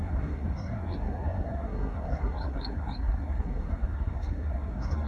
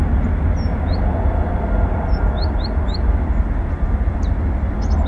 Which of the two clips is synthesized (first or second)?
first